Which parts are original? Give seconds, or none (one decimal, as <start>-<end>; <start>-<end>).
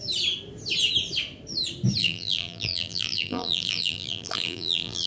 0.0-2.0